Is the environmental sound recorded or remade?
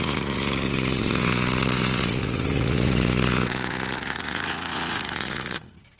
remade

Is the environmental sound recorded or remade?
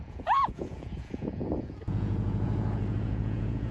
remade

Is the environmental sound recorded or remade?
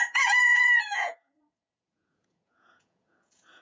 remade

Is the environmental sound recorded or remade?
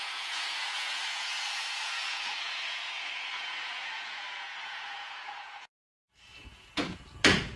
remade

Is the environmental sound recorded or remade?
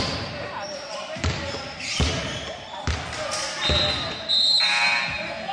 recorded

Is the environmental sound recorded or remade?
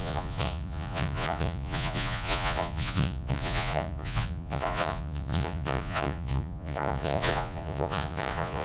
remade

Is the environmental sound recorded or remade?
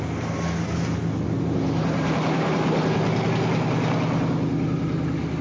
recorded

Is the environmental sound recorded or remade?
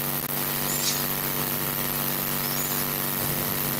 recorded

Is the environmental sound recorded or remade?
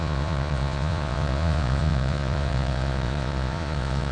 remade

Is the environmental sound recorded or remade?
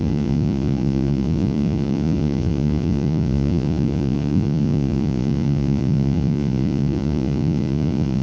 remade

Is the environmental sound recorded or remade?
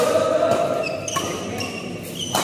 recorded